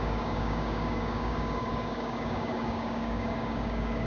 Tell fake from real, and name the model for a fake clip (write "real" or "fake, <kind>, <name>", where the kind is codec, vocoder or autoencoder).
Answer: fake, codec, DAC